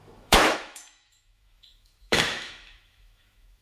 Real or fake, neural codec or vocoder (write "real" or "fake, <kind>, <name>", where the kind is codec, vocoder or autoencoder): fake, autoencoder, DAC-VAE